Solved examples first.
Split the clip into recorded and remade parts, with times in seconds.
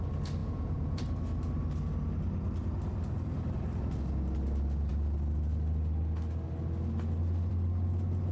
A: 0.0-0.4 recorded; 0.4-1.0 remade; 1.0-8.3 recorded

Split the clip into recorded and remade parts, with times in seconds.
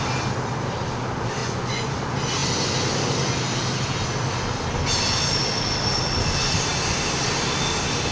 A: 0.0-1.4 recorded; 1.4-1.9 remade; 1.9-8.1 recorded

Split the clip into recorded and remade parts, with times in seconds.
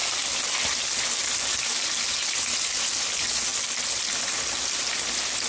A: 0.0-5.5 recorded